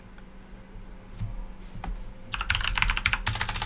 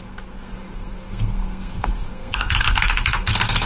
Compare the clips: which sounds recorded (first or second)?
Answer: first